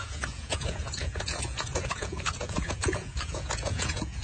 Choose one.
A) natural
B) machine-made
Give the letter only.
B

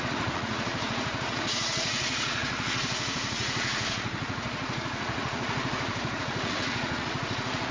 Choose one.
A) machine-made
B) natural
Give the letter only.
A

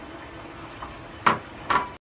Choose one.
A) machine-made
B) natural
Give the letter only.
B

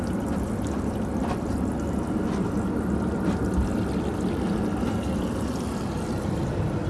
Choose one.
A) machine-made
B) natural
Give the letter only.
B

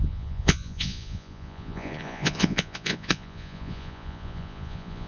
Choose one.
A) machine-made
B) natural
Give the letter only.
A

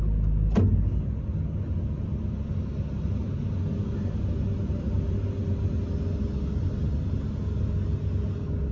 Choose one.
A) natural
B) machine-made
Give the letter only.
A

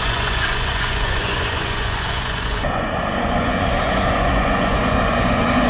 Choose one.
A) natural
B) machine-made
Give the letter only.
B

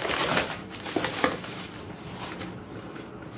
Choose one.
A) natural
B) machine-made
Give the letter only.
A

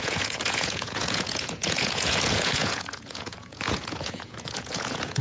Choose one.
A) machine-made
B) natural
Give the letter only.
A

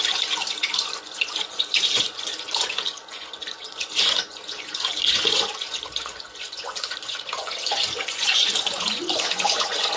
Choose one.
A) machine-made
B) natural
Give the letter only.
A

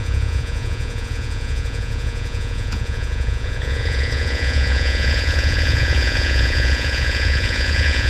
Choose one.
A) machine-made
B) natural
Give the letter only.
A